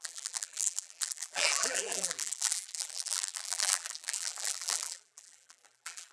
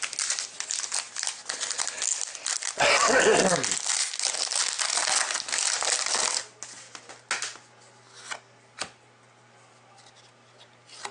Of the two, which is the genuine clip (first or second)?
second